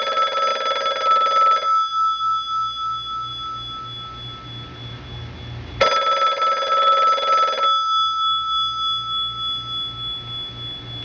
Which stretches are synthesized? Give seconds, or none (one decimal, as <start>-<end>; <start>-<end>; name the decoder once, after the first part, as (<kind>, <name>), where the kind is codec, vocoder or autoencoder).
none